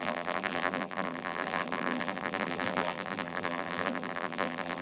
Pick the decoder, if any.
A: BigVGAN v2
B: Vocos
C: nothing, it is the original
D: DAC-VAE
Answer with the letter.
A